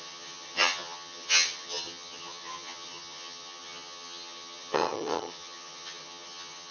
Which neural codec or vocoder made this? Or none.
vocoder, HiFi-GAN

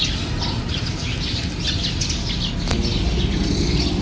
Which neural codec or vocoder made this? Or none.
none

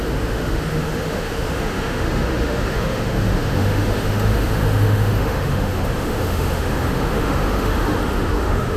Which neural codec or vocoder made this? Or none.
autoencoder, DAC-VAE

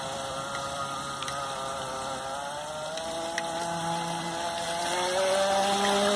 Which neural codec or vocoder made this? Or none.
none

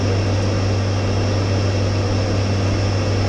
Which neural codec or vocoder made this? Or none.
none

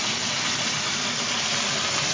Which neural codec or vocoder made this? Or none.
none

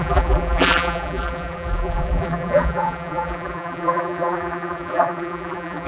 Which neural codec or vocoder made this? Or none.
vocoder, BigVGAN v2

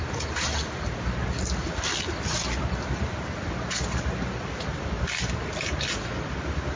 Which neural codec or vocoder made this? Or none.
none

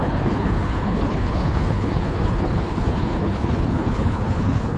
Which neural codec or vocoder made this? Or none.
codec, HILCodec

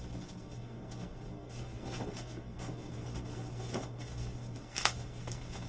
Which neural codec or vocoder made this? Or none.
codec, SNAC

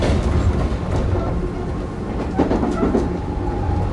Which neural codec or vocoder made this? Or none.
none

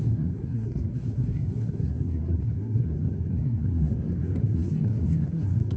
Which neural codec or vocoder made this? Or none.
codec, SNAC